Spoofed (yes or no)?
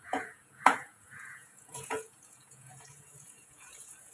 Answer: yes